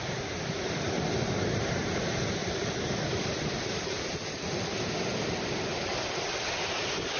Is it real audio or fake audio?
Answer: real